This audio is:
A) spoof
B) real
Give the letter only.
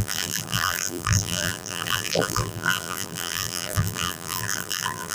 A